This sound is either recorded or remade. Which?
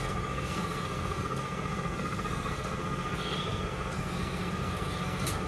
remade